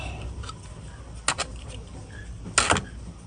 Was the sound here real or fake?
real